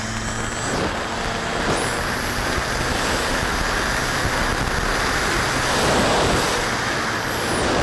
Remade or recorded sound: recorded